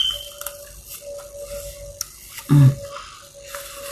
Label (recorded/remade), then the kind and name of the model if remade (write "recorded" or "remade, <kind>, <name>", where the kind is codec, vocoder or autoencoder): recorded